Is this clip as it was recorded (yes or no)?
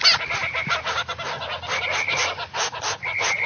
yes